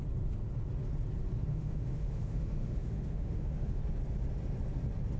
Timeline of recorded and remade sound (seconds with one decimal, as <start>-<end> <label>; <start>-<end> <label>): 0.0-1.5 recorded; 1.5-3.8 remade; 3.8-5.2 recorded